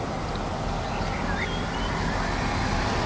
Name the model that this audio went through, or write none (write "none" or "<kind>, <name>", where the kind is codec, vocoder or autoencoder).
none